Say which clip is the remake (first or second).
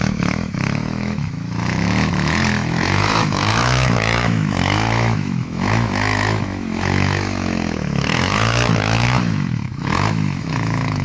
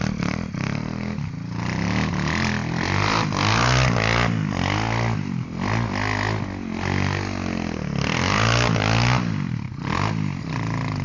first